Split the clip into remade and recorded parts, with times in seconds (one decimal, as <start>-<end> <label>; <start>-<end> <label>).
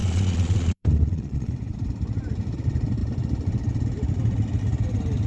0.0-1.5 remade; 1.5-5.3 recorded